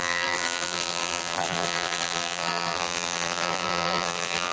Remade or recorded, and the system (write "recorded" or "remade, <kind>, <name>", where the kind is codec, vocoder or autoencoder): remade, vocoder, BigVGAN v2